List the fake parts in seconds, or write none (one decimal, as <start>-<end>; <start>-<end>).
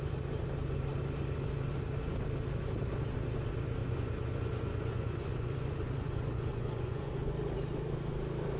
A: 3.8-7.3